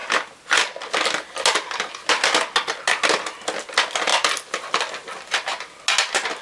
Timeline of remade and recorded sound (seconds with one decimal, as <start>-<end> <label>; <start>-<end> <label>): 0.0-6.4 recorded